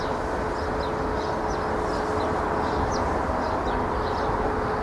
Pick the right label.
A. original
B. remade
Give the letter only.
A